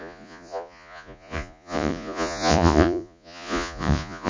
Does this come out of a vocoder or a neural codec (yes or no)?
yes